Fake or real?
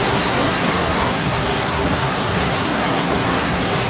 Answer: fake